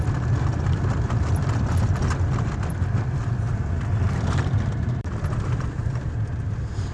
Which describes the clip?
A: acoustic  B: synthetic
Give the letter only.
B